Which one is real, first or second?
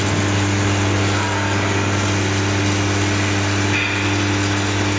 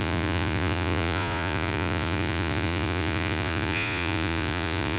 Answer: first